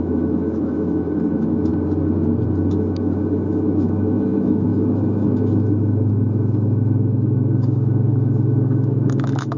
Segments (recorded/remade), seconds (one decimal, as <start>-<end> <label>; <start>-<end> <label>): 0.0-1.7 remade; 1.7-2.7 recorded; 2.7-9.6 remade